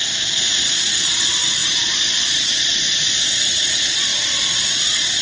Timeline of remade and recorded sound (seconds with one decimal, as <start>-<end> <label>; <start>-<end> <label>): 0.0-5.2 remade